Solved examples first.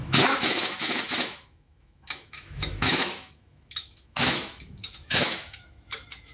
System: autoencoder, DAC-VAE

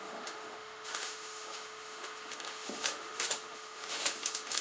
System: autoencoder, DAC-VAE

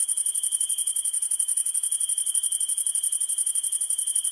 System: none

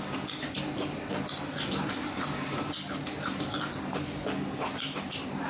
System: none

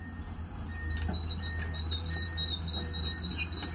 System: none